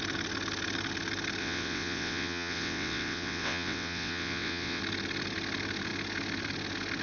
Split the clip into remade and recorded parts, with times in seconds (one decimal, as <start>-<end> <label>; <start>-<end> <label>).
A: 0.0-1.4 recorded; 1.4-4.8 remade; 4.8-7.0 recorded